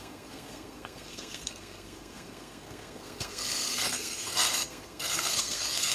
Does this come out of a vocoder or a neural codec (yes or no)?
yes